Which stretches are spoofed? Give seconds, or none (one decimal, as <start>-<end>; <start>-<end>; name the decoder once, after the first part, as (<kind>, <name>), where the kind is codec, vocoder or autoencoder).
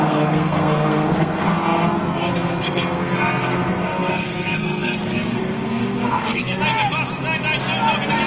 0.0-6.6 (codec, SNAC)